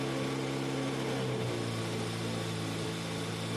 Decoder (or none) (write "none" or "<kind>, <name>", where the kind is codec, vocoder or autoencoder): none